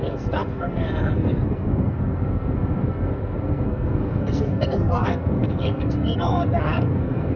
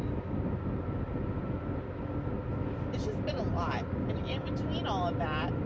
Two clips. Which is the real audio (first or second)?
second